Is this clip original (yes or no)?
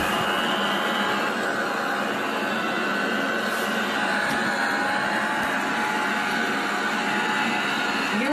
yes